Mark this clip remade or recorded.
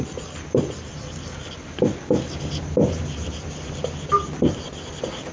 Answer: recorded